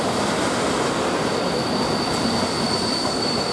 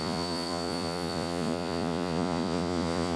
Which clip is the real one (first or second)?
first